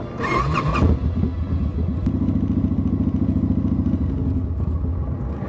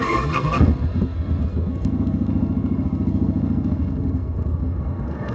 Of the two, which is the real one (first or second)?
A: first